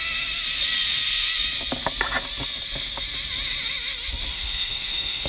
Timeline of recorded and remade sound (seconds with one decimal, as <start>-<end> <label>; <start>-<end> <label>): 0.0-4.3 recorded; 4.3-5.3 remade